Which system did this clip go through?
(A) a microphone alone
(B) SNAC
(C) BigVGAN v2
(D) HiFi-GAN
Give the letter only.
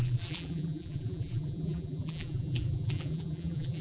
C